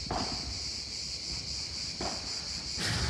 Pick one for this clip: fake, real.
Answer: real